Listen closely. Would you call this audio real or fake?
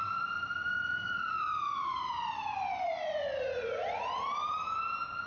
real